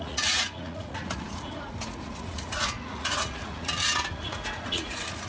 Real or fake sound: fake